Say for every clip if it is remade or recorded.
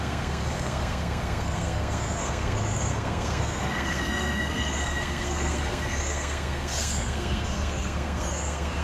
remade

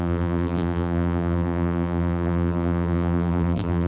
remade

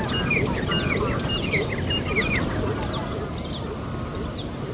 recorded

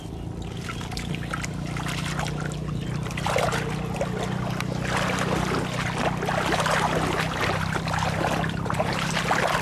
recorded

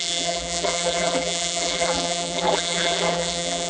remade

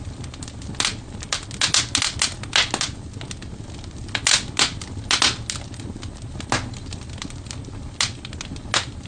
recorded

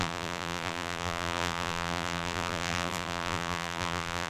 remade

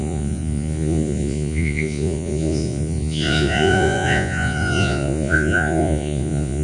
remade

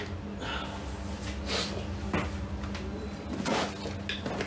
recorded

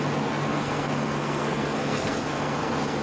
remade